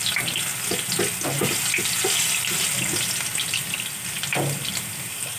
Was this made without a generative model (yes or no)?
yes